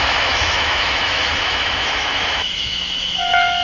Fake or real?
fake